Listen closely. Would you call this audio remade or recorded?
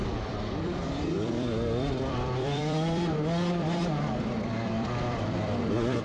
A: remade